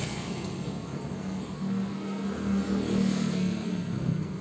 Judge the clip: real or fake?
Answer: fake